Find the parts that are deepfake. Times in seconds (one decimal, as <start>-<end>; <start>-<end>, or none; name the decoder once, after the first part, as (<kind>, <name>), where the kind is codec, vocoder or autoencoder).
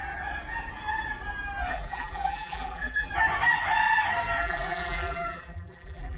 1.7-3.1 (vocoder, BigVGAN v2); 4.4-6.2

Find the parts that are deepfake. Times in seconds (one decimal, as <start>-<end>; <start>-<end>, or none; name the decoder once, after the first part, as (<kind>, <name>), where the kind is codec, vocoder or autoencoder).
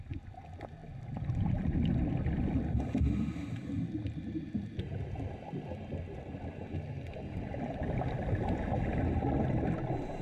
none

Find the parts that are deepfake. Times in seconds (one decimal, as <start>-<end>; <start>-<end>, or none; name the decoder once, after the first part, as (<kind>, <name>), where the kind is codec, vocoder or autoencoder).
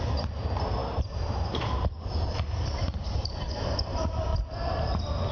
0.0-4.3 (vocoder, BigVGAN v2)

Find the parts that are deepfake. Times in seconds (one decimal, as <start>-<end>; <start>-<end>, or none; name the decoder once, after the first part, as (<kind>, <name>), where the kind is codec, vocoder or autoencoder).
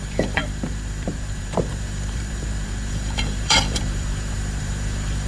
0.0-5.3 (vocoder, BigVGAN v2)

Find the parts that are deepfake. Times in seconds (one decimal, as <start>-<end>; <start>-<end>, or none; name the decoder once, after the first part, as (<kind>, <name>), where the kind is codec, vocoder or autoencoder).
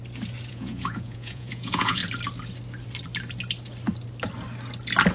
0.5-2.0 (vocoder, Vocos)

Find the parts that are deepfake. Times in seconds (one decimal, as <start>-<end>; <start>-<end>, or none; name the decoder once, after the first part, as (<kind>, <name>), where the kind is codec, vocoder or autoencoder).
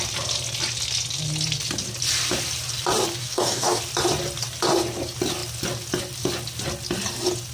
3.2-3.8 (codec, DAC)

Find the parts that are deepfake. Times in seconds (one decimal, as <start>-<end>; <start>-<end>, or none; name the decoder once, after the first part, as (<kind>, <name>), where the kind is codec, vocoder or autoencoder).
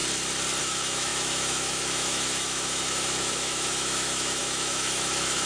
0.6-5.5 (autoencoder, DAC-VAE)